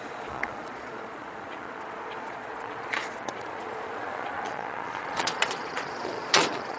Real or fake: fake